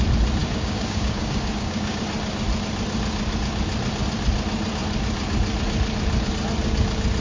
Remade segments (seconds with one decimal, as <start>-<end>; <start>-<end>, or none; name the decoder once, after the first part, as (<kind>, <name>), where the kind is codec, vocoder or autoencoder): 0.4-2.0 (codec, DAC)